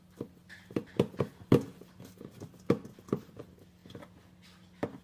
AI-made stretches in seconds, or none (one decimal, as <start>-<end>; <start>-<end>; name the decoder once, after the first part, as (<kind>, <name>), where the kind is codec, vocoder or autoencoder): none